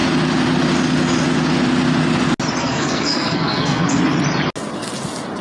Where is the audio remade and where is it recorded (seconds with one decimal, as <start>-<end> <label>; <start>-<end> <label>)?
0.0-2.6 recorded; 2.6-4.0 remade; 4.0-5.4 recorded

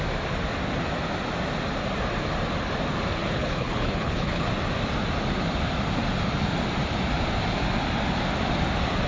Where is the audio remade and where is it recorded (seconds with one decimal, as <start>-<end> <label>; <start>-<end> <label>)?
0.0-3.2 recorded; 3.2-4.5 remade; 4.5-9.1 recorded

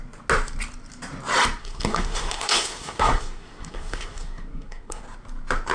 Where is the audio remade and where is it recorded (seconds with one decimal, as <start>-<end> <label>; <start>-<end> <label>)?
0.0-1.6 recorded; 1.6-5.0 remade; 5.0-5.7 recorded

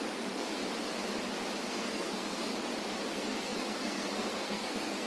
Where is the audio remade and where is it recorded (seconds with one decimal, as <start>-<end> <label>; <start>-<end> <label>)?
0.0-0.6 remade; 0.6-1.7 recorded; 1.7-2.5 remade; 2.5-3.1 recorded; 3.1-5.1 remade

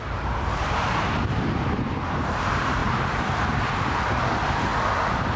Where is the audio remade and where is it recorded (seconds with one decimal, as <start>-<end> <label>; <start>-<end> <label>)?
0.0-4.7 remade; 4.7-5.4 recorded

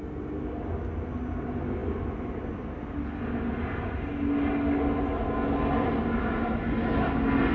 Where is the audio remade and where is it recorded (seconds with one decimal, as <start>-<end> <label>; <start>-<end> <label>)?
0.0-7.5 recorded